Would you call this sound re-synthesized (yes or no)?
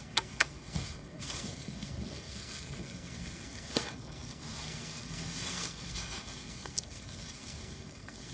yes